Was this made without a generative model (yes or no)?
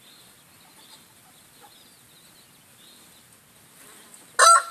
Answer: yes